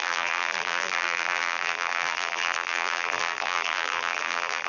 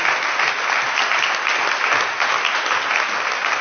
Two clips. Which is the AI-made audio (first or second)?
first